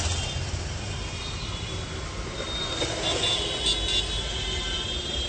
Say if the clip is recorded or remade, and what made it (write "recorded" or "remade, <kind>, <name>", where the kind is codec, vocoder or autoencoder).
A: recorded